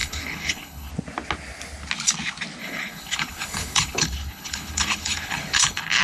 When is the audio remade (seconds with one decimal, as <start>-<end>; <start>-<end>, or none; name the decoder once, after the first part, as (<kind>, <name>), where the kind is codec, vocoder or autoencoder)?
0.0-0.9 (codec, HILCodec); 2.6-6.0